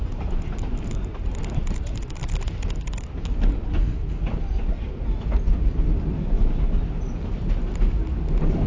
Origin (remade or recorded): recorded